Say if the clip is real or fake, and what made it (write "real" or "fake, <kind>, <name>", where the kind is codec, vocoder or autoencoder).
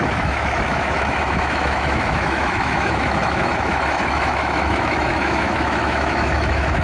fake, autoencoder, DAC-VAE